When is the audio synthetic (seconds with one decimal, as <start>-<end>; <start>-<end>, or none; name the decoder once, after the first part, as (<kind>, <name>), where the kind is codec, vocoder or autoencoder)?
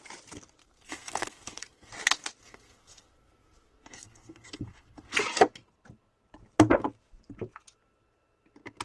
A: 0.6-1.9 (codec, SNAC); 2.4-5.2